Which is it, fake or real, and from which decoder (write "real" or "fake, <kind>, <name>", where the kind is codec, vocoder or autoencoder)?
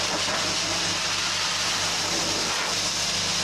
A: real